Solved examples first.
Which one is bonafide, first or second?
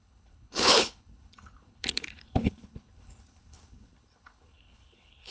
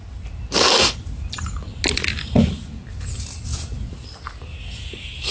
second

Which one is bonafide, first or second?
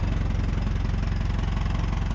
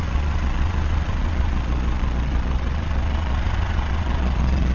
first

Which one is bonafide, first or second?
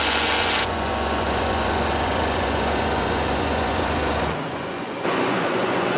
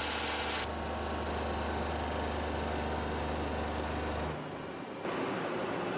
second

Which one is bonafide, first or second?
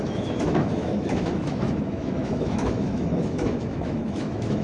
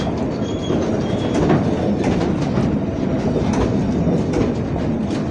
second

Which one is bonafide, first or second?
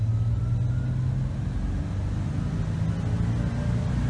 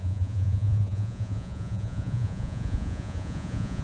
first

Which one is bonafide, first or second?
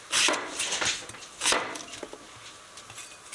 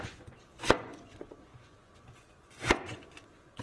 first